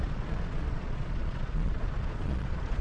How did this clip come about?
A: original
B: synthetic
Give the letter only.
B